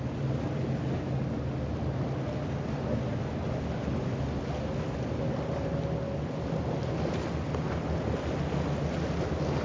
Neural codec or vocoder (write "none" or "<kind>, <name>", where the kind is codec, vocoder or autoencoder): none